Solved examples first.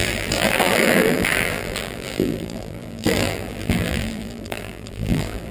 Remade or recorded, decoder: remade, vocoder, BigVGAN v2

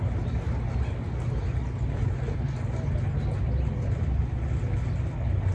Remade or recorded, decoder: recorded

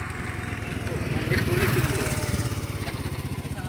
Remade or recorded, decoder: recorded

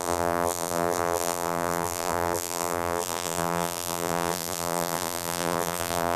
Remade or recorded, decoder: remade, vocoder, BigVGAN v2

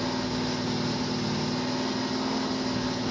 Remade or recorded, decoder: recorded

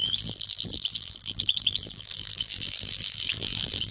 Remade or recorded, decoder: remade, vocoder, BigVGAN v2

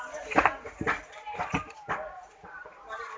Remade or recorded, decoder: recorded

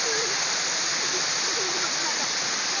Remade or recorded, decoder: recorded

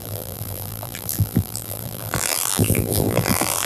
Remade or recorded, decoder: remade, vocoder, BigVGAN v2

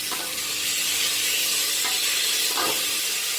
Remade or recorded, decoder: recorded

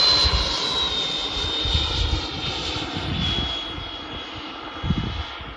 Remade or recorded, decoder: recorded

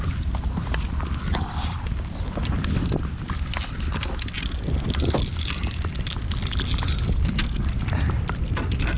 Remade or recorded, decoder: recorded